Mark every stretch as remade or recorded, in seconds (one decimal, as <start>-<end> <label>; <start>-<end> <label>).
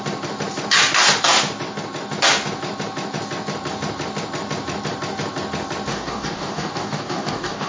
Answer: 0.0-5.9 recorded; 5.9-7.7 remade